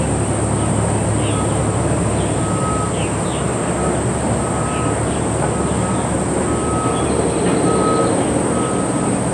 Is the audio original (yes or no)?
yes